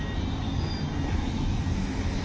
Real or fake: real